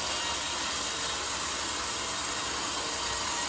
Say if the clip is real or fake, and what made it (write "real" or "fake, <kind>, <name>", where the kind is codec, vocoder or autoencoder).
real